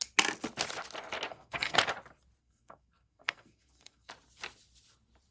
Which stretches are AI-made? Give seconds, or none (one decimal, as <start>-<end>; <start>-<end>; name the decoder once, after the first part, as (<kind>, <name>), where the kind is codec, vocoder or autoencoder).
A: 1.3-1.8 (codec, SNAC); 2.4-4.1